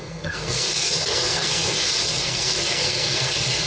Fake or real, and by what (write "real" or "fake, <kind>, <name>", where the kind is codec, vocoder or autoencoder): fake, codec, SNAC